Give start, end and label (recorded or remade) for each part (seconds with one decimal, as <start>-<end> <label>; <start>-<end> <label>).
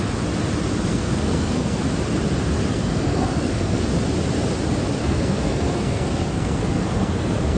0.0-0.9 recorded; 0.9-1.8 remade; 1.8-2.7 recorded; 2.7-3.8 remade; 3.8-5.0 recorded; 5.0-7.6 remade